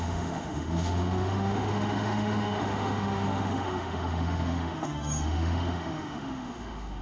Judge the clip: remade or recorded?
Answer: remade